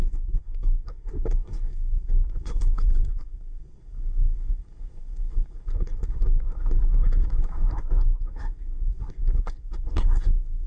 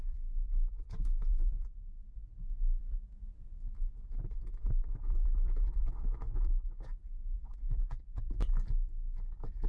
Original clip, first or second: second